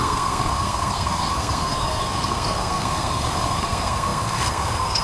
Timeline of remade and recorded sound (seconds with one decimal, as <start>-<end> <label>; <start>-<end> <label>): 0.0-5.0 remade

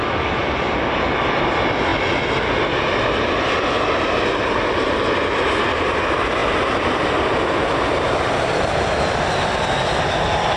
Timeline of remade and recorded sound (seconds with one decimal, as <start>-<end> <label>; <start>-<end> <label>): 0.0-10.6 recorded